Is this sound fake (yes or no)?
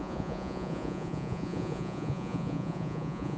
yes